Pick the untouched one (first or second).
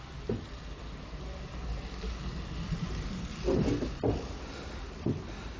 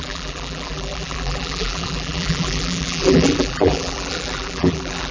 first